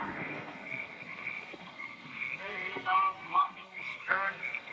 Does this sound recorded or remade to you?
remade